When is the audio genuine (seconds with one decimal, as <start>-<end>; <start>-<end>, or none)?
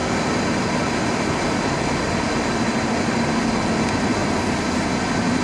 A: 0.0-5.4